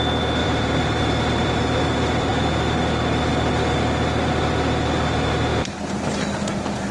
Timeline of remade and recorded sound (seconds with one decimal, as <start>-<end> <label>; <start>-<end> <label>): 0.0-0.4 recorded; 0.4-2.3 remade; 2.3-5.5 recorded; 5.5-6.9 remade